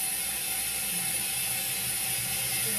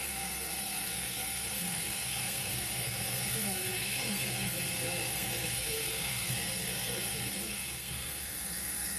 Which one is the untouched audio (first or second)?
first